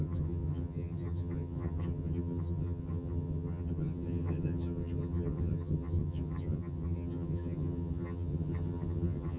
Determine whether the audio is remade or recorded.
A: remade